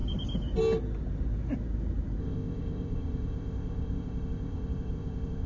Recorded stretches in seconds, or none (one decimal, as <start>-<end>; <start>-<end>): 0.0-2.2